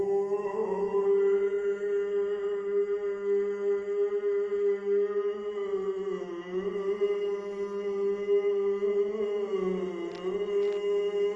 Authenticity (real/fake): real